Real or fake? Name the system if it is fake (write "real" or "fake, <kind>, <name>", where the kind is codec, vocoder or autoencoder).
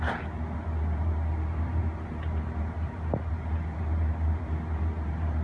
real